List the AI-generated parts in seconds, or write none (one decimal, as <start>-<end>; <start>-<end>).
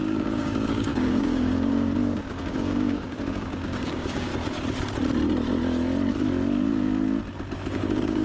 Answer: 0.0-4.3; 7.7-8.2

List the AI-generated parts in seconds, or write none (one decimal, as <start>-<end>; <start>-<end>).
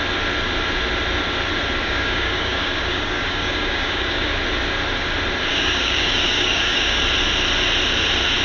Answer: 1.8-4.3; 5.5-7.0